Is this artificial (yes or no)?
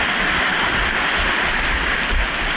no